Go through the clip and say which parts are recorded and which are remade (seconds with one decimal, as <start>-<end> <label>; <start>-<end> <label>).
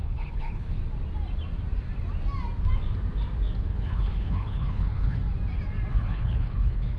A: 0.0-0.8 remade; 0.8-3.6 recorded; 3.6-5.2 remade; 5.2-5.9 recorded; 5.9-7.0 remade